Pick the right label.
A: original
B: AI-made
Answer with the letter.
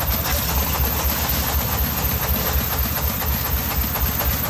A